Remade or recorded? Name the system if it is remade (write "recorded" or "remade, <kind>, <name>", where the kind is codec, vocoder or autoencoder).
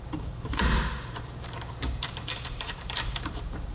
remade, vocoder, BigVGAN v2